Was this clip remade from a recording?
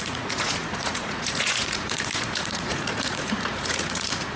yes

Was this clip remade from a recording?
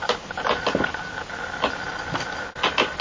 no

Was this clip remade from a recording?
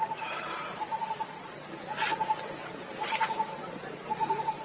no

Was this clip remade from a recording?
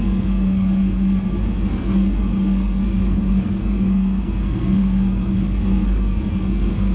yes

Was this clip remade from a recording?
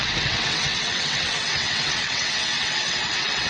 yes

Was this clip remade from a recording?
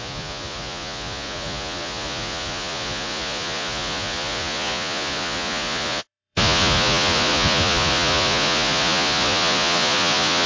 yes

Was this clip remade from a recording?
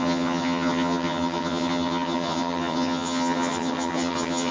yes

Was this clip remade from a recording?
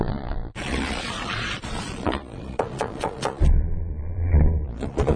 yes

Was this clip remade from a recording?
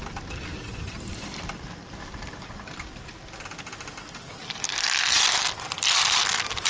no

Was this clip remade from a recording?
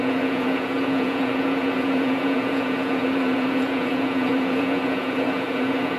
yes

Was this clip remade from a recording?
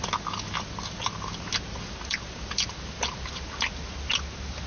no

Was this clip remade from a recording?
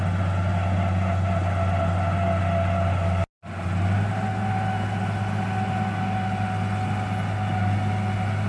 no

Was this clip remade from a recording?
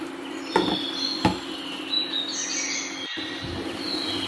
no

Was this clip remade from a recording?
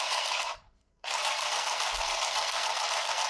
yes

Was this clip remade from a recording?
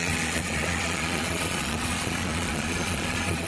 yes